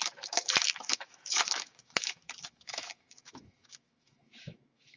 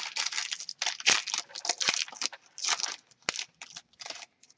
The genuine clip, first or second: second